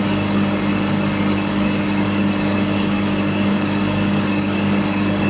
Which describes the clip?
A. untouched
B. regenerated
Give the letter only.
B